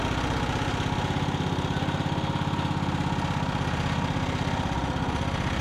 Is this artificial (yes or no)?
no